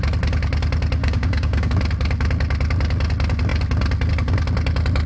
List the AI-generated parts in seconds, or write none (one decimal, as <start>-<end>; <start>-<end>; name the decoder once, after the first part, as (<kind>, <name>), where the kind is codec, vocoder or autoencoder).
1.0-1.7 (codec, DAC)